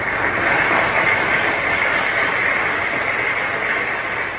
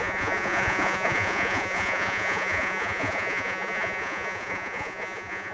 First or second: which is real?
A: first